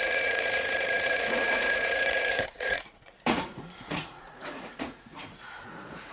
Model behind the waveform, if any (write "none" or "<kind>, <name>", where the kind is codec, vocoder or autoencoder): vocoder, Vocos